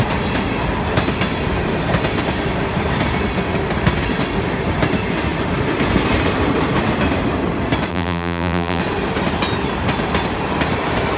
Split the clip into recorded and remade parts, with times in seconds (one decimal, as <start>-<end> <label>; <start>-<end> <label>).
0.0-7.9 recorded; 7.9-8.8 remade; 8.8-11.2 recorded